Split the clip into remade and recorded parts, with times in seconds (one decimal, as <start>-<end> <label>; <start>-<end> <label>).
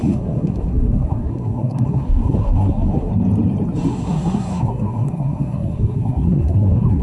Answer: 0.0-3.1 remade; 3.1-3.9 recorded; 3.9-7.0 remade